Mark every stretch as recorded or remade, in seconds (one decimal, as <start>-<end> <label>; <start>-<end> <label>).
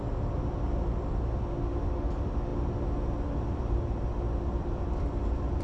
0.0-5.6 recorded